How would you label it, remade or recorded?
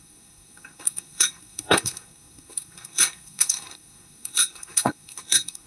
remade